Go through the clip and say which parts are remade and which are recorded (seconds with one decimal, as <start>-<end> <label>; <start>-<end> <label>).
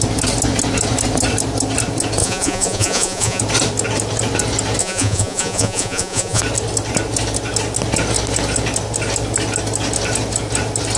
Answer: 0.0-2.2 recorded; 2.2-3.4 remade; 3.4-4.8 recorded; 4.8-6.4 remade; 6.4-11.0 recorded